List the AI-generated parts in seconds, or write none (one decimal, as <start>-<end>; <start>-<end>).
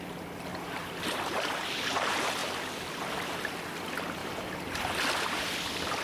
0.5-1.8; 2.4-3.0; 4.2-5.0